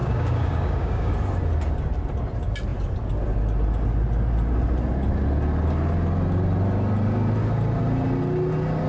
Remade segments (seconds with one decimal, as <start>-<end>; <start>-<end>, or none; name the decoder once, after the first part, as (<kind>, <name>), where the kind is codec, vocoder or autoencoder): 0.0-1.1 (codec, DAC)